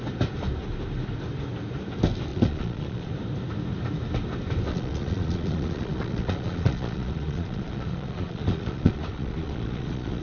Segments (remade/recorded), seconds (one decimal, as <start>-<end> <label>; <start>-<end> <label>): 0.0-2.3 recorded; 2.3-3.1 remade; 3.1-4.7 recorded; 4.7-10.2 remade